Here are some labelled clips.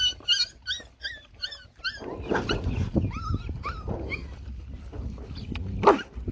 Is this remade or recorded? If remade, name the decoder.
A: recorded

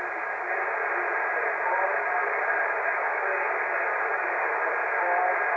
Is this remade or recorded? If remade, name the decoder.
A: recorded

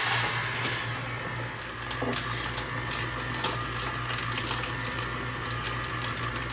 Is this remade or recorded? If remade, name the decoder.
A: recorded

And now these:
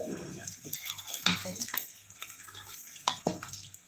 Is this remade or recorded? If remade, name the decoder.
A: remade, codec, SNAC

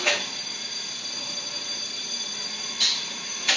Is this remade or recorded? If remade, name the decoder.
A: recorded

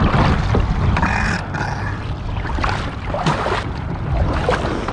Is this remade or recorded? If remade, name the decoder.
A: recorded